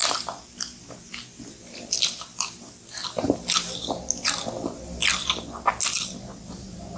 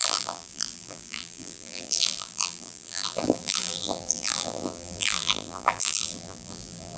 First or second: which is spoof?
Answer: second